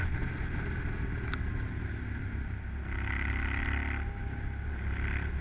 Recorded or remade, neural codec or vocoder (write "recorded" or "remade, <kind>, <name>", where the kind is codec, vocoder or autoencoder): recorded